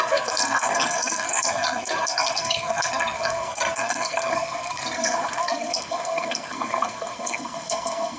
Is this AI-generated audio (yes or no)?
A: yes